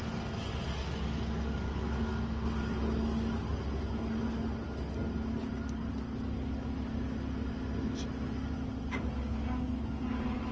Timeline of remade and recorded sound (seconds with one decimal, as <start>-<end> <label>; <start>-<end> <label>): 0.0-10.5 recorded